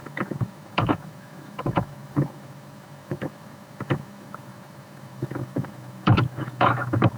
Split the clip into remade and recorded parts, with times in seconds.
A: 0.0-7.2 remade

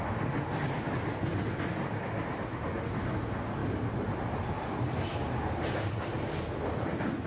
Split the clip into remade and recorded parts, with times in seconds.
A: 0.0-7.3 recorded

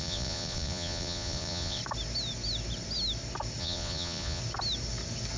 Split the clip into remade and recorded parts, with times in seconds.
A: 0.0-1.8 remade; 1.8-3.6 recorded; 3.6-4.4 remade; 4.4-5.4 recorded

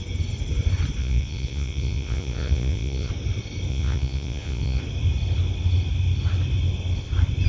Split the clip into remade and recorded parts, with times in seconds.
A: 0.0-1.0 recorded; 1.0-3.1 remade; 3.1-3.7 recorded; 3.7-4.8 remade; 4.8-7.5 recorded

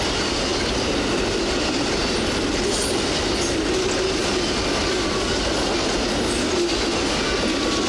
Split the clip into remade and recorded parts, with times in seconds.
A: 0.0-7.9 recorded

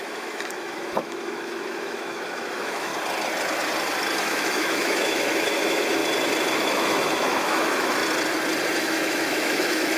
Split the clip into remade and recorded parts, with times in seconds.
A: 0.0-2.9 remade; 2.9-4.2 recorded; 4.2-6.0 remade; 6.0-6.5 recorded; 6.5-8.0 remade; 8.0-8.8 recorded; 8.8-10.0 remade

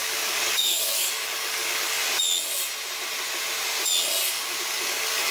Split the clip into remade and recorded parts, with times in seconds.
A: 0.0-2.0 remade; 2.0-4.3 recorded; 4.3-5.3 remade